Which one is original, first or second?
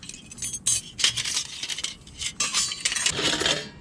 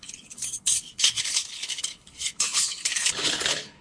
first